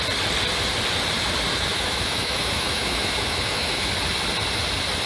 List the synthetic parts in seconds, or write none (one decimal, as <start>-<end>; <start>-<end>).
1.5-3.9